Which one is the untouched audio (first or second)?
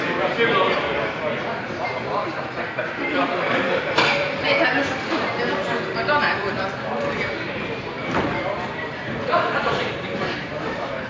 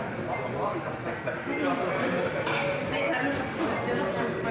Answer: second